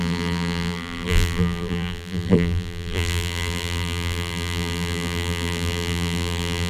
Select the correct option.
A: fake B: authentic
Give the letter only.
A